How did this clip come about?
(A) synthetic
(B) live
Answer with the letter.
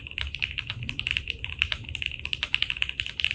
B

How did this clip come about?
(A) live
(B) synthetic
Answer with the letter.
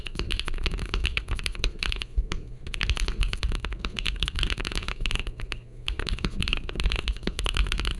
B